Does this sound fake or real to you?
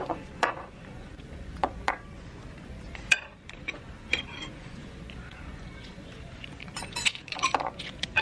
fake